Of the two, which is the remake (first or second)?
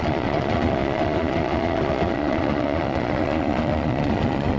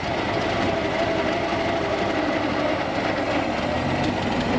first